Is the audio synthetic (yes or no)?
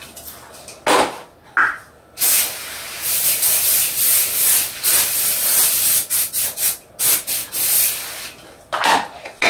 no